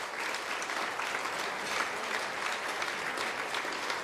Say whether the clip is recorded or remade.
recorded